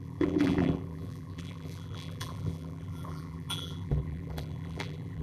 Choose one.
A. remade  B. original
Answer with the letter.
A